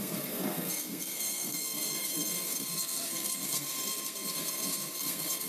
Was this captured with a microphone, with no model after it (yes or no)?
no